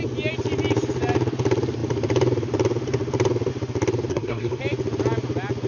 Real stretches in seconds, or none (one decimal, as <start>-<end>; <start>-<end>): 0.0-4.1; 4.6-5.7